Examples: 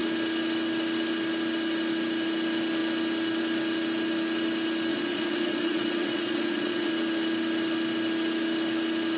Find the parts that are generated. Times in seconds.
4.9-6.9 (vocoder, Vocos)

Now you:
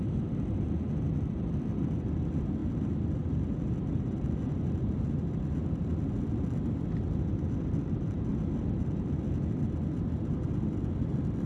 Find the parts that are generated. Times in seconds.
none

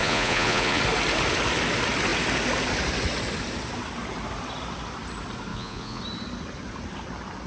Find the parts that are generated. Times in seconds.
0.0-0.8 (vocoder, Vocos); 5.5-6.0